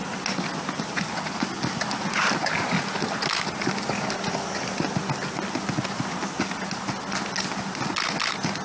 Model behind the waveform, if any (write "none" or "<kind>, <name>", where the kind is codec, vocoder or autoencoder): none